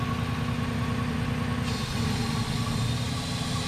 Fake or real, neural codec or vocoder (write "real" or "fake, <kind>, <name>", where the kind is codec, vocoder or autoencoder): real